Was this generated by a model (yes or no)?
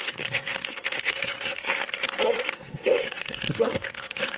yes